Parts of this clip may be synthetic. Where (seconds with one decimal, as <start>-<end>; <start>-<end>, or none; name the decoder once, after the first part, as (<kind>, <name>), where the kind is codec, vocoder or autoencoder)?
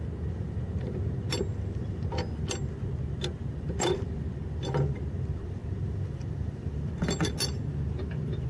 none